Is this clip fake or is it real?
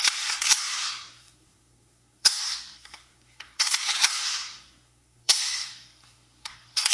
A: fake